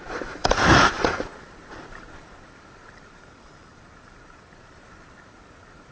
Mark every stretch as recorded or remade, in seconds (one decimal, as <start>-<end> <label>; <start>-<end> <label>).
0.0-5.9 remade